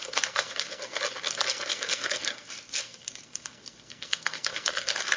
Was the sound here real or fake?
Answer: fake